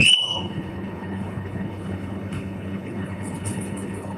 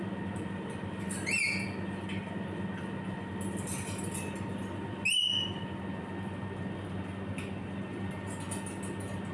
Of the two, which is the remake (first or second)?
first